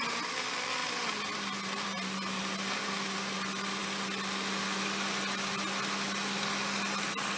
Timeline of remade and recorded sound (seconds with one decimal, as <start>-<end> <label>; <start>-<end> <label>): 0.0-7.4 recorded